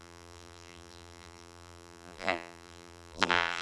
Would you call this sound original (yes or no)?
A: no